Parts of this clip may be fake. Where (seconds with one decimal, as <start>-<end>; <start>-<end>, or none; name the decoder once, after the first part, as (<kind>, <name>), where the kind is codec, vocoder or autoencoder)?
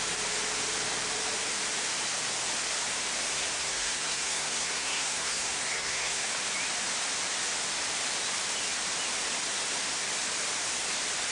3.3-6.3 (codec, SNAC)